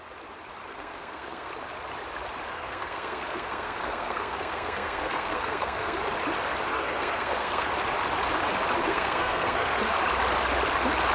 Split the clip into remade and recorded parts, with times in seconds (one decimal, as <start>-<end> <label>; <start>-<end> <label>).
0.0-0.7 recorded; 0.7-1.5 remade; 1.5-2.5 recorded; 2.5-6.0 remade; 6.0-6.7 recorded; 6.7-7.7 remade; 7.7-8.8 recorded; 8.8-9.8 remade; 9.8-11.1 recorded